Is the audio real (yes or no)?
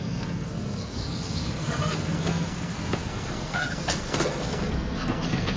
no